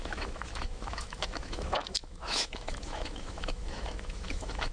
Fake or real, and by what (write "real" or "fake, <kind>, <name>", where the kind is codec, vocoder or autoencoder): fake, autoencoder, DAC-VAE